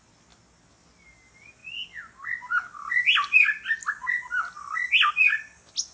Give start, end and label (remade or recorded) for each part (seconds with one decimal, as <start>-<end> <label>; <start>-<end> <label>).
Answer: 0.0-5.9 recorded